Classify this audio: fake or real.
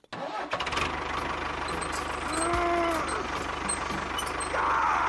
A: real